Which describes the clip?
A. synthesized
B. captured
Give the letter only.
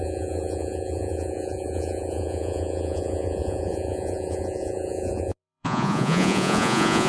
A